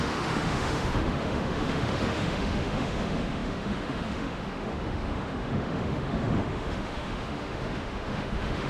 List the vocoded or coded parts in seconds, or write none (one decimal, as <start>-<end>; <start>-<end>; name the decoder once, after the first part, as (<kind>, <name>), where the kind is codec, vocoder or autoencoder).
0.0-8.7 (autoencoder, DAC-VAE)

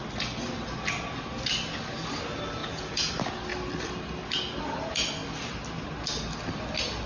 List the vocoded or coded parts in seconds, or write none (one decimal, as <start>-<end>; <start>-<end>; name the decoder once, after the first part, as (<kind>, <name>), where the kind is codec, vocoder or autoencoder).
2.6-3.1 (vocoder, Vocos)